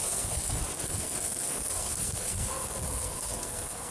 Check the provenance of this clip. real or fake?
fake